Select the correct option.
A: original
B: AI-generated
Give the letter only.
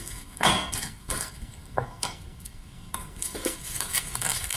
B